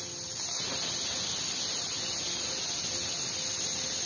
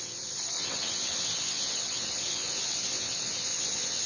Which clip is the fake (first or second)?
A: second